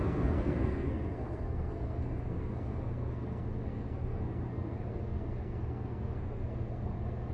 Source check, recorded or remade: remade